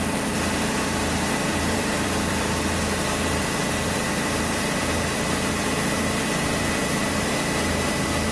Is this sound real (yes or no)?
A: no